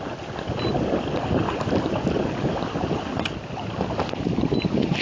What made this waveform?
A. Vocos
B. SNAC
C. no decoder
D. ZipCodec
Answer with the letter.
C